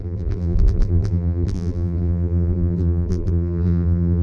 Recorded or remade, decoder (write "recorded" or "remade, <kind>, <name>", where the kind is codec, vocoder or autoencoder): remade, vocoder, BigVGAN v2